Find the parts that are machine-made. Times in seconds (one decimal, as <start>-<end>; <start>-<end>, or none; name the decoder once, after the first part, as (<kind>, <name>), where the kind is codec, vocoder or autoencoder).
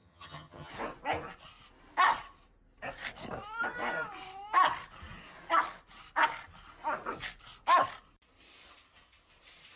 0.0-0.7 (vocoder, HiFi-GAN)